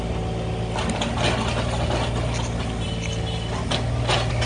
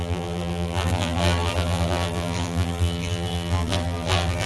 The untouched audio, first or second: first